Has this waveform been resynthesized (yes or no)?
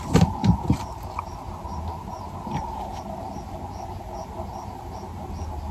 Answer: no